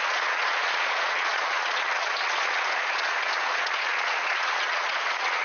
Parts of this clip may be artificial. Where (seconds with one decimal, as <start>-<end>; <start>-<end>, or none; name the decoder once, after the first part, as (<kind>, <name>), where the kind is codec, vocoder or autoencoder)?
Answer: 0.0-5.4 (vocoder, Vocos)